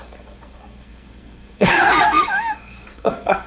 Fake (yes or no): yes